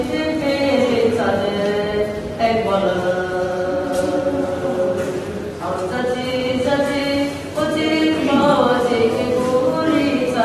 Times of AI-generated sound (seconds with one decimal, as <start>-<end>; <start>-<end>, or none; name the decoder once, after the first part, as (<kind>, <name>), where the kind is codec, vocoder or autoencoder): none